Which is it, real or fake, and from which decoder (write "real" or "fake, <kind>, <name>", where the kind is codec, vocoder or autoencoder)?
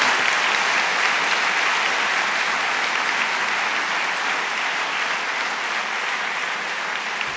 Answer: real